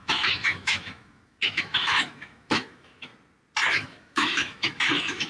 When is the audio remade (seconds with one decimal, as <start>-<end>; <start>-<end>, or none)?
0.0-3.1; 3.7-5.3